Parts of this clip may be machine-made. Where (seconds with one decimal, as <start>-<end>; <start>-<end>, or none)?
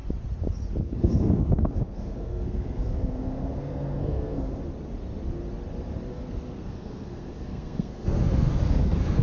0.8-4.6; 6.1-9.2